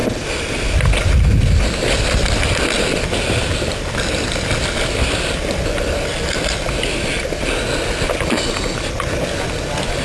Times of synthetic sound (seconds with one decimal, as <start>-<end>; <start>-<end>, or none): none